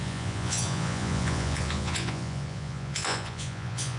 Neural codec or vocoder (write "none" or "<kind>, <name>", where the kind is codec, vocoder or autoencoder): vocoder, Vocos